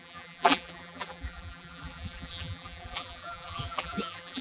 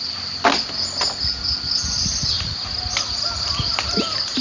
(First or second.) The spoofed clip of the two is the first